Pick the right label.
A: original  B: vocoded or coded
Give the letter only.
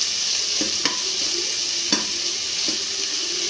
A